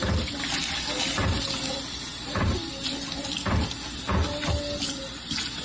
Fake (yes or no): no